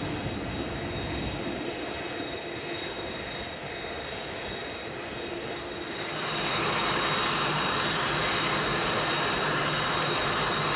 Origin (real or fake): real